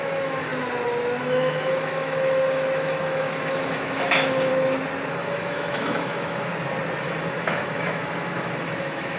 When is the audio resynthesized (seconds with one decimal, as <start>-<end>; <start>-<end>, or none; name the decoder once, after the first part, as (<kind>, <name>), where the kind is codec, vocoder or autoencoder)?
0.0-0.5 (autoencoder, DAC-VAE); 1.2-4.5; 5.1-6.5; 7.0-9.2